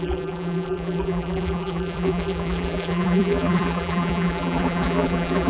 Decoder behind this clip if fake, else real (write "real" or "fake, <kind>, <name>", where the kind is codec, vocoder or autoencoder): fake, vocoder, BigVGAN v2